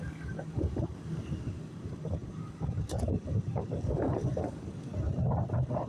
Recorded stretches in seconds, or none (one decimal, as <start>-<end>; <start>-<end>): 4.9-5.5

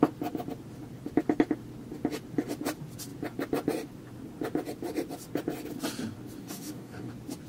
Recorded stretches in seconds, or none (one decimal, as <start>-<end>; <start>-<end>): 0.0-6.4; 7.1-7.5

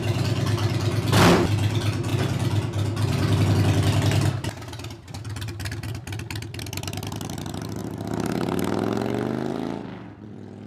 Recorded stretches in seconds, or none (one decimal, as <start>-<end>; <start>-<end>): 0.0-10.7